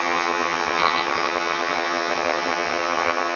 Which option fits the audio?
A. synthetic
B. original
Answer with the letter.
A